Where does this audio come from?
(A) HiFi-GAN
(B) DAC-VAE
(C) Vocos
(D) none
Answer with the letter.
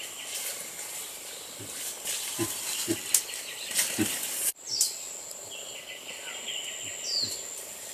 D